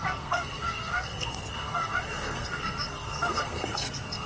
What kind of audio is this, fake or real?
fake